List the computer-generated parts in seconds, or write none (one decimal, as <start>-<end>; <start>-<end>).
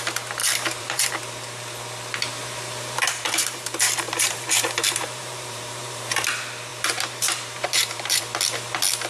0.4-1.1; 2.3-6.0; 6.7-8.2